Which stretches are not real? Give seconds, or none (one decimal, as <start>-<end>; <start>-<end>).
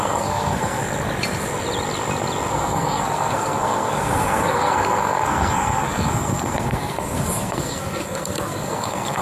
0.0-0.8; 2.5-9.2